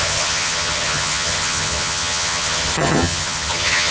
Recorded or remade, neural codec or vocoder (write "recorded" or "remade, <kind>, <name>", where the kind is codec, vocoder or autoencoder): remade, vocoder, HiFi-GAN